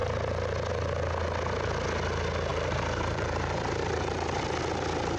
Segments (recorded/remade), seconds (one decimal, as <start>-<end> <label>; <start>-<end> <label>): 0.0-2.5 recorded; 2.5-4.4 remade; 4.4-5.2 recorded